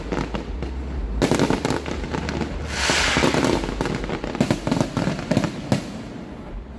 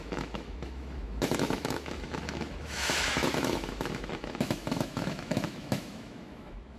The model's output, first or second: second